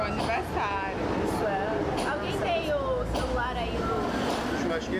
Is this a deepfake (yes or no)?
no